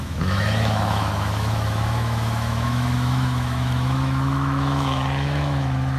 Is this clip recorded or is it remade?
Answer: remade